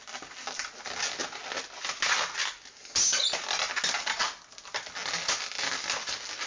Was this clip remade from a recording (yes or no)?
no